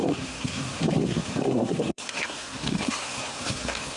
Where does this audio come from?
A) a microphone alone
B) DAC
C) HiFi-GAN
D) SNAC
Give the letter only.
D